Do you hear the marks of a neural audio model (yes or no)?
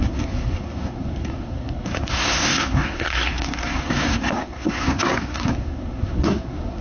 yes